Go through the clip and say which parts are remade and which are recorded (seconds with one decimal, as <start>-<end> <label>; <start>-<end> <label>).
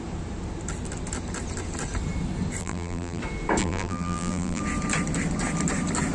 0.0-2.6 recorded; 2.6-3.2 remade; 3.2-3.6 recorded; 3.6-4.6 remade; 4.6-6.1 recorded